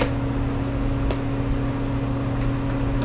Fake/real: real